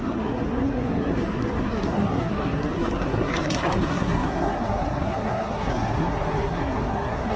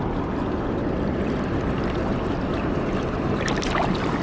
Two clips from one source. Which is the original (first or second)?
second